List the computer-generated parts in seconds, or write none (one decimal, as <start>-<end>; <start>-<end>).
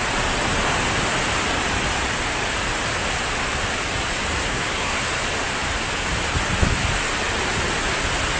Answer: 4.4-5.0